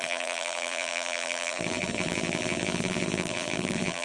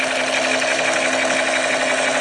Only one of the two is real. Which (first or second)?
second